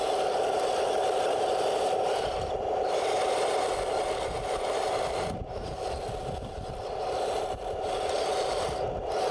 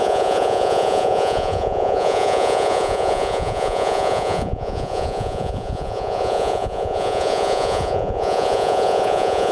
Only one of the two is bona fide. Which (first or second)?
first